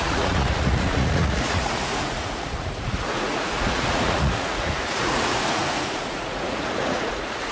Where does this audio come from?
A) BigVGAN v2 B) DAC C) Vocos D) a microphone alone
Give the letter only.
C